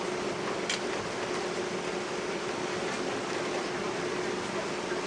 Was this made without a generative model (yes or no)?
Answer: yes